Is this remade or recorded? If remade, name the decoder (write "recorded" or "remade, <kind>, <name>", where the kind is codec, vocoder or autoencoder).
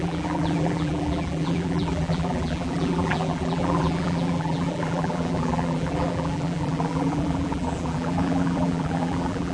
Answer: remade, vocoder, BigVGAN v2